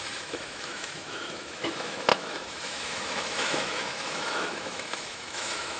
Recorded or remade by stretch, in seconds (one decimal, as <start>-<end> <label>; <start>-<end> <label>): 0.0-5.8 remade